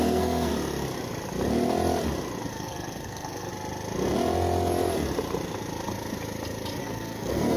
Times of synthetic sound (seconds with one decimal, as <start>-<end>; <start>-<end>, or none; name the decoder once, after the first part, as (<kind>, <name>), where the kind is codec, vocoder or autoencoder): 0.0-0.5 (codec, SNAC); 2.5-3.5; 6.8-7.6

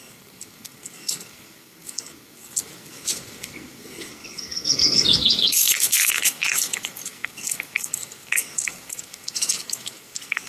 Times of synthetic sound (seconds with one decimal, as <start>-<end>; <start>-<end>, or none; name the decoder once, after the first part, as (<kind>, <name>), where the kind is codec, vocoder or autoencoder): 0.0-10.5 (codec, SNAC)

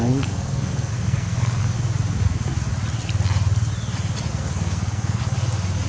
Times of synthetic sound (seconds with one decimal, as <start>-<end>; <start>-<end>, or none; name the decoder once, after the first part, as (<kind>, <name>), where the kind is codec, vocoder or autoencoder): 0.0-1.6 (codec, SNAC); 4.3-5.2

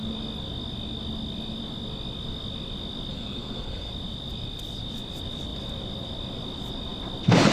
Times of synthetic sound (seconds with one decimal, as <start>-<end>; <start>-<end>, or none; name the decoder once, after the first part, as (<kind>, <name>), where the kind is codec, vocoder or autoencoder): 3.1-3.9 (codec, SNAC)

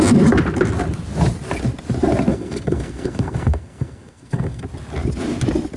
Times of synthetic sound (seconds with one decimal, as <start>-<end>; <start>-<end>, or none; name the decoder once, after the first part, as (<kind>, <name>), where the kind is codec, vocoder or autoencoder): 2.3-4.6 (codec, SNAC)

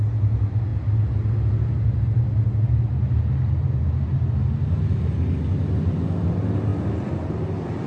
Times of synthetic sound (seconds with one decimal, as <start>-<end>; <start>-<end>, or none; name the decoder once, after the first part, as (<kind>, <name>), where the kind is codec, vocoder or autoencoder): none

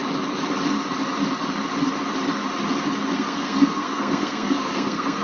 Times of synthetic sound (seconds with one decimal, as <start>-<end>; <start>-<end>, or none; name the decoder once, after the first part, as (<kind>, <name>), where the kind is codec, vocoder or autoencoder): 3.1-5.2 (codec, SNAC)